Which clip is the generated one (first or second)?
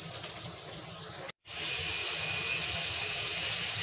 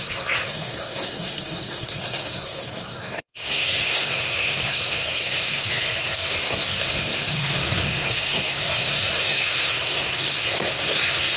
second